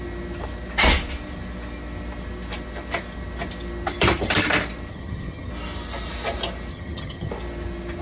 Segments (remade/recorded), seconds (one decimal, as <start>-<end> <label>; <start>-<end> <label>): 0.0-4.9 recorded; 4.9-5.5 remade; 5.5-6.7 recorded; 6.7-7.3 remade; 7.3-8.0 recorded